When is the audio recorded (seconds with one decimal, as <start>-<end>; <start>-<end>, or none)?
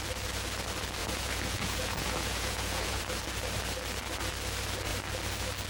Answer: 0.0-1.0; 3.0-5.7